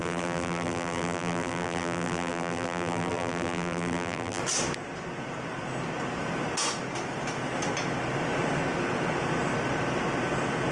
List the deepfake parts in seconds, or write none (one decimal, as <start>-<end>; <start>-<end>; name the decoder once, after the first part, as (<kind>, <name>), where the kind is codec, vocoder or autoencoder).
0.0-4.4 (vocoder, BigVGAN v2)

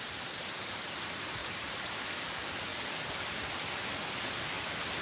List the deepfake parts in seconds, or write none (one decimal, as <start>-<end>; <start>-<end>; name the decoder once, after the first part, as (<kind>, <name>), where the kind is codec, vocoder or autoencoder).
1.4-1.9 (vocoder, BigVGAN v2)

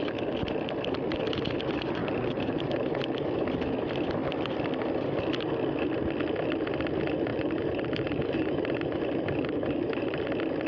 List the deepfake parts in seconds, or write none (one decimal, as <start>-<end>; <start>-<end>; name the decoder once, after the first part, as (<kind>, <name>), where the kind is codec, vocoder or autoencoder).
2.0-2.6 (vocoder, BigVGAN v2); 7.3-10.2

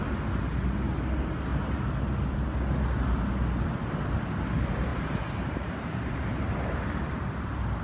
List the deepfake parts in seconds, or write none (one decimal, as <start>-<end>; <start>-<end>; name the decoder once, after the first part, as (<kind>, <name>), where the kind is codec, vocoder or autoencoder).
1.5-2.0 (vocoder, BigVGAN v2); 4.9-7.8